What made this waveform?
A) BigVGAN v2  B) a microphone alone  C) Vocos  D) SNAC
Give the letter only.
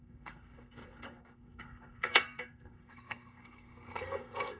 D